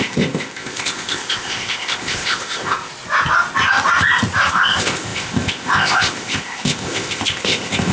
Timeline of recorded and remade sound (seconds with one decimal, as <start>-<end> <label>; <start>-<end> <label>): 0.0-2.9 remade; 2.9-4.5 recorded; 4.5-7.9 remade